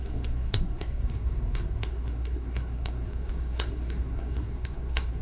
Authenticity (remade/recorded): remade